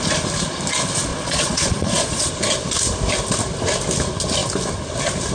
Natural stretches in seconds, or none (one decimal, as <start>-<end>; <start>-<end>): 0.0-1.1; 2.3-5.3